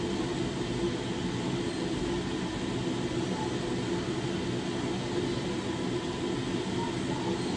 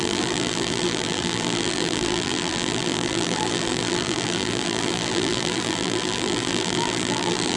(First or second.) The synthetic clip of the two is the second